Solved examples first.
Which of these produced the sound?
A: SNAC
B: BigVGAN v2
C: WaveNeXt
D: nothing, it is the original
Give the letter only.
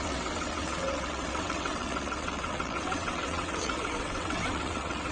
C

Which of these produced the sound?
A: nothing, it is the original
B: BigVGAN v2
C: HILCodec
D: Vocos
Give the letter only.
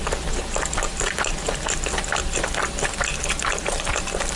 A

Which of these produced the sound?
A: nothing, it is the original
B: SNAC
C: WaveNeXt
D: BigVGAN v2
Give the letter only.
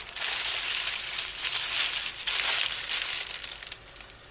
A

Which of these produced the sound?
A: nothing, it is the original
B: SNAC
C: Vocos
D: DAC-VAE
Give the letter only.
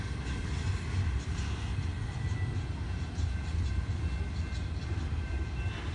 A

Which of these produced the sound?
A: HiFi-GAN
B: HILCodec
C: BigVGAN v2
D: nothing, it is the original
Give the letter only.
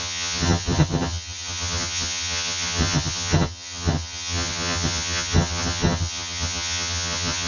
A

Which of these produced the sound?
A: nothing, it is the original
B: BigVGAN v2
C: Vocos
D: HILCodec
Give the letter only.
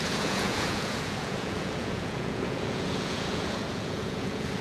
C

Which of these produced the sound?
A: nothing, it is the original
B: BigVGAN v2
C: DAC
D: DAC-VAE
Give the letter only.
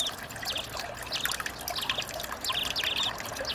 A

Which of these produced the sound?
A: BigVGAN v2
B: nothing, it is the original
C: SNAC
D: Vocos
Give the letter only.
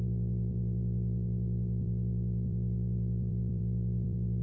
A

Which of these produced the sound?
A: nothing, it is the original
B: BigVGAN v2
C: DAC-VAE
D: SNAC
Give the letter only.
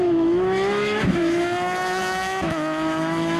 C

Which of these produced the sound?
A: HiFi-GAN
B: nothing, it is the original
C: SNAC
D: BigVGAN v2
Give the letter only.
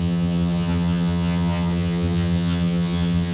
A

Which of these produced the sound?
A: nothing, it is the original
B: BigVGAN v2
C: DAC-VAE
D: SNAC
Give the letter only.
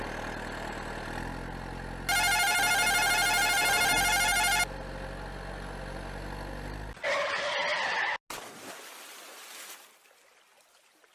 A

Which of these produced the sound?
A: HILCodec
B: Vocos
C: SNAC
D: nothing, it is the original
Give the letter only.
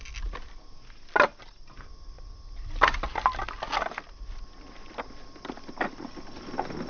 D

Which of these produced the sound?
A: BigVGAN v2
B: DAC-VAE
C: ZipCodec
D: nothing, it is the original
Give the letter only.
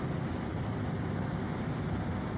D